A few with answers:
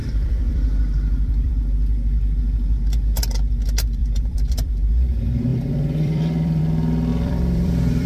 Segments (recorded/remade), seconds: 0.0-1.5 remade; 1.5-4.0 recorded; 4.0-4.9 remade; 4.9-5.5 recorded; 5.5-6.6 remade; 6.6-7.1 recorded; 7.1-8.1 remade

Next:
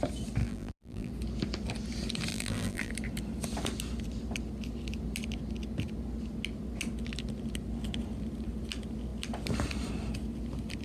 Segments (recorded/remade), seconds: 0.0-0.4 recorded; 0.4-1.1 remade; 1.1-2.3 recorded; 2.3-2.9 remade; 2.9-10.8 recorded

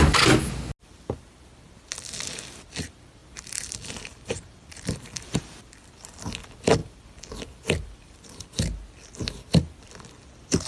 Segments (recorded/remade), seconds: 0.0-3.2 recorded; 3.2-5.4 remade; 5.4-6.8 recorded; 6.8-8.4 remade; 8.4-10.7 recorded

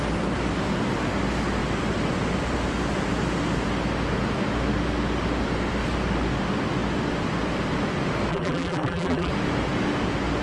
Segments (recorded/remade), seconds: 0.0-8.3 recorded; 8.3-9.3 remade; 9.3-10.4 recorded